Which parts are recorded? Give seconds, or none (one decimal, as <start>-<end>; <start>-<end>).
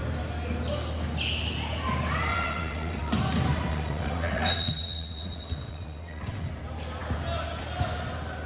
0.0-2.3; 3.1-3.7; 6.5-8.5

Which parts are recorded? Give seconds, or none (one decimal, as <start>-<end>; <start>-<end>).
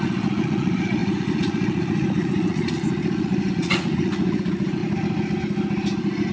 4.8-6.3